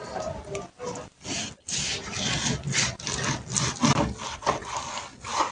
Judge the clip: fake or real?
real